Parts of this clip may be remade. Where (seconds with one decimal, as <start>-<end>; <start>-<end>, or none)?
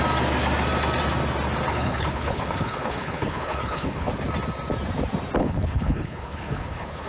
1.7-4.1; 5.4-7.1